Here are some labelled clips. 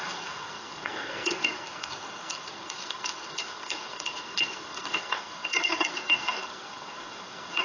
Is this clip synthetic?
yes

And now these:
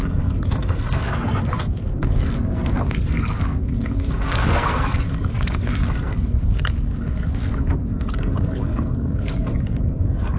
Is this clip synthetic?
yes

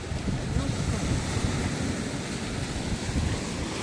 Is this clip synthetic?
no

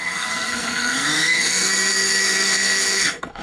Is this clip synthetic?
yes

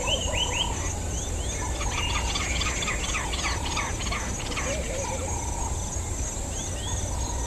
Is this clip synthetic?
no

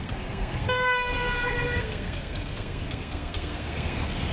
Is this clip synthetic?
yes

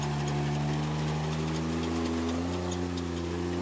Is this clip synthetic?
no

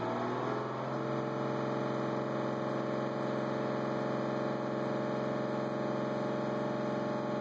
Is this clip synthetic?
no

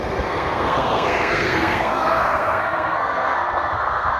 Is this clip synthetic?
yes